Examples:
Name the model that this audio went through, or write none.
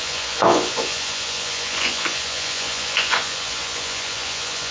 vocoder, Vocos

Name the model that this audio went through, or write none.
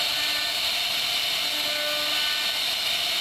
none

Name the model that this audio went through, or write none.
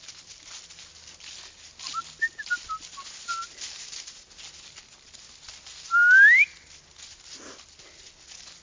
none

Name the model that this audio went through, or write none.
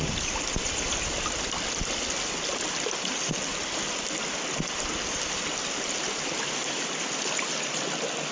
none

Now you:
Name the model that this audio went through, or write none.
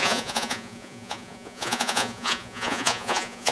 vocoder, Vocos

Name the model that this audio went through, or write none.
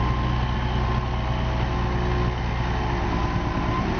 none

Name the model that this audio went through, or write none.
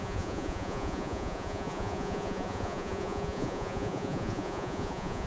vocoder, Vocos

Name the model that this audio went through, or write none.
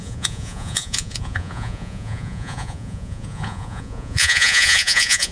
vocoder, Vocos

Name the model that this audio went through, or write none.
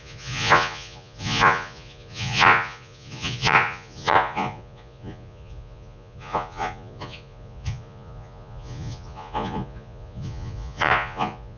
vocoder, Vocos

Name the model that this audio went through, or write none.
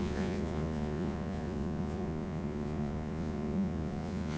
vocoder, Vocos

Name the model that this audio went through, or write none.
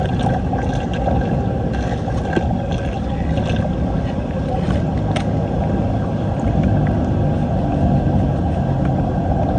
none